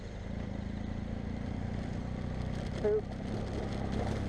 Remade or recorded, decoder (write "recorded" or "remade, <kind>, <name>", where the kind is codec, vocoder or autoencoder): recorded